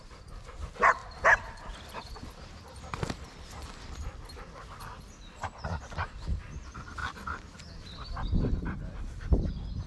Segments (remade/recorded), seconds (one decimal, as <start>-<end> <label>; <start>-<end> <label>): 0.0-9.9 recorded